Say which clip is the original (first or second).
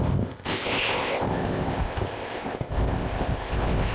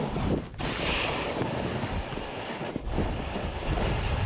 second